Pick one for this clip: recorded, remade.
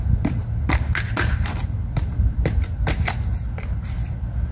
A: recorded